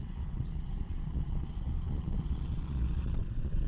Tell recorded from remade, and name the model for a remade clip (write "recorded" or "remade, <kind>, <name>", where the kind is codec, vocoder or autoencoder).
remade, vocoder, Vocos